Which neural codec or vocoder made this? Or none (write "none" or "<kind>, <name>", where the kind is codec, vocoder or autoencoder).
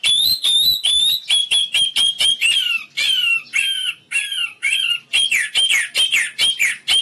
vocoder, BigVGAN v2